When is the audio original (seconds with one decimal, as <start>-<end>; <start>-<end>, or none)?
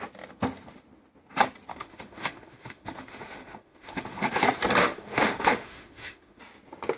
0.0-1.7; 4.3-4.8; 6.4-7.0